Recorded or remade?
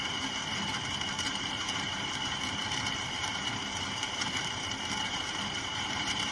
remade